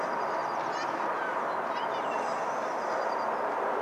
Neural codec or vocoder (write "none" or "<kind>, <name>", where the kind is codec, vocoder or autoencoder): none